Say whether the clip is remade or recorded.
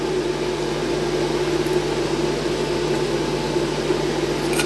recorded